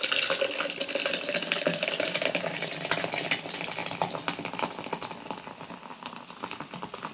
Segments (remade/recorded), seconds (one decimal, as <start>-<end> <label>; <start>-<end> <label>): 0.0-1.7 recorded; 1.7-2.7 remade; 2.7-7.1 recorded